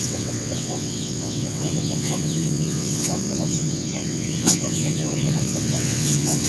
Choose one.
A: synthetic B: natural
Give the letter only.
A